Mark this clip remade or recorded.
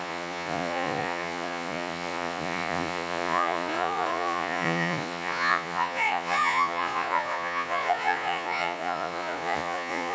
remade